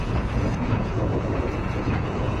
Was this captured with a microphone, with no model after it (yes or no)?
no